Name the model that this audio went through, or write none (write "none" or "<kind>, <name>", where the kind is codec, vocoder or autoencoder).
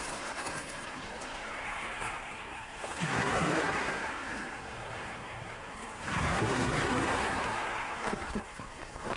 codec, SNAC